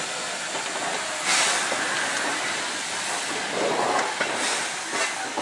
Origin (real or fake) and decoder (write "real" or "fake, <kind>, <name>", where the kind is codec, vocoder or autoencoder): real